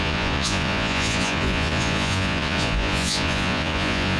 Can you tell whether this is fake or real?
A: fake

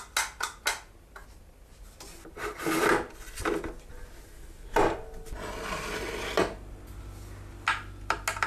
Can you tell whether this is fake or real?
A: real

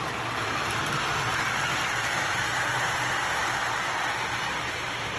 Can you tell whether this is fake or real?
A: real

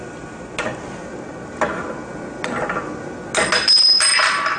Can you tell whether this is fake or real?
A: real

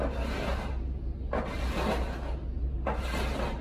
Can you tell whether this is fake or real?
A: real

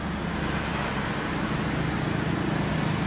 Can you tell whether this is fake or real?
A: real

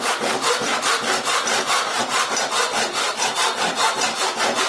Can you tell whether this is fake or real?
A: real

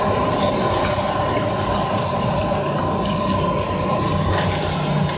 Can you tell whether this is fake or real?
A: real